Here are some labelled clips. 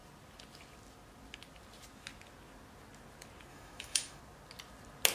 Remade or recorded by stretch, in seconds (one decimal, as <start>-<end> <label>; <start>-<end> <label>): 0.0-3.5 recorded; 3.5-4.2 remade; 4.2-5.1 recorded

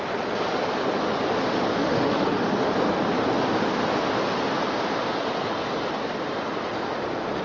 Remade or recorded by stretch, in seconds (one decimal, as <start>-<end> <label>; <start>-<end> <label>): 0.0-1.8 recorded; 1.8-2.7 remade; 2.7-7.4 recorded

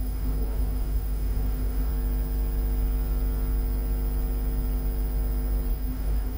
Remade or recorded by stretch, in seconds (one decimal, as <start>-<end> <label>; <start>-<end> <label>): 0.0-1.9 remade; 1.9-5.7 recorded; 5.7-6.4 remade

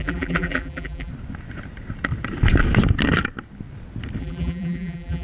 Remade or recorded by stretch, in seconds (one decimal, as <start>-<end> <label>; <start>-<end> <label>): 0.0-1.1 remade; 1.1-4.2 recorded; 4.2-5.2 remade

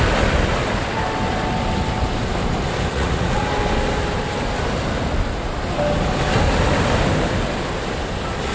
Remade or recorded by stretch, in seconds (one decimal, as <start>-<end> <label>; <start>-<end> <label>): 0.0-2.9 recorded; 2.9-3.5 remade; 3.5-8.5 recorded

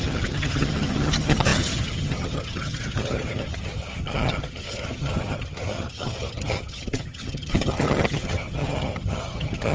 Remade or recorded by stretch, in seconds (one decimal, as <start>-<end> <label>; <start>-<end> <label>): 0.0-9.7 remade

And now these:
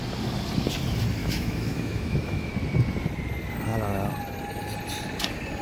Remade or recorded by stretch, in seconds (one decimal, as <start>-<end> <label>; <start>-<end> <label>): 0.0-1.2 recorded; 1.2-2.5 remade; 2.5-5.6 recorded

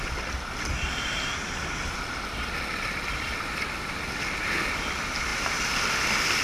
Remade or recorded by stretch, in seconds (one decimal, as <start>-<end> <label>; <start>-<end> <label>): 0.0-6.4 recorded